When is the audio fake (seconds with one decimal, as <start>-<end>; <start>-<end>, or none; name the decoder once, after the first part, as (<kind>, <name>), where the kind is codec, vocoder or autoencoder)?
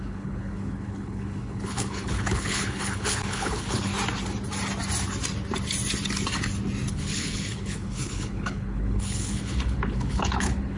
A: 0.0-3.9 (codec, HILCodec); 6.9-10.8